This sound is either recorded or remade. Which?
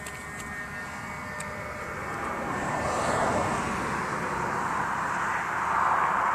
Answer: recorded